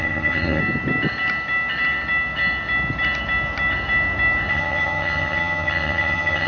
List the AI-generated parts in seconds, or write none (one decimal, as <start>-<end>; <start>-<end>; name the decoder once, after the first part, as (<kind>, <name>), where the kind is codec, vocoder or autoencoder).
0.0-0.6 (vocoder, HiFi-GAN); 4.5-6.5